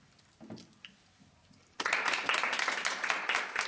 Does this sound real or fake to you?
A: real